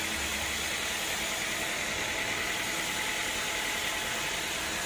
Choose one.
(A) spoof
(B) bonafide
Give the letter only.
B